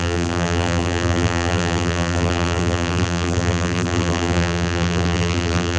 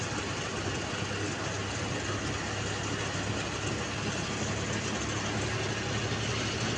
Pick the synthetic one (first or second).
first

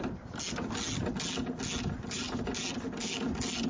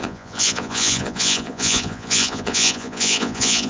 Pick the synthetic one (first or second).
second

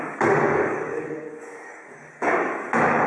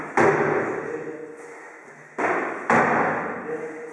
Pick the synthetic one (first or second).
first